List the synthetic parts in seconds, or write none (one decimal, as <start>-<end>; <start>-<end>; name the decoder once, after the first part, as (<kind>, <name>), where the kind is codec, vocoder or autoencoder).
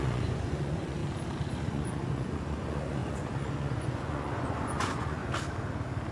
0.0-1.0 (vocoder, Vocos); 1.6-5.2